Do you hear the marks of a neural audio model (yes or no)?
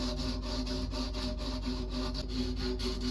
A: no